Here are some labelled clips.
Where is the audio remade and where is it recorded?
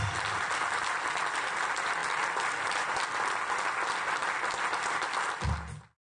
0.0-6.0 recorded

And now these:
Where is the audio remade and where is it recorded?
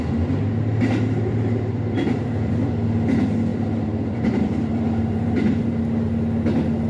0.0-1.3 recorded; 1.3-2.7 remade; 2.7-3.5 recorded; 3.5-5.8 remade; 5.8-6.9 recorded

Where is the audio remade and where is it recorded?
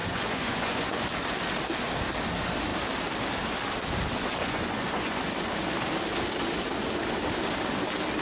0.0-1.1 remade; 1.1-4.4 recorded; 4.4-5.2 remade; 5.2-8.2 recorded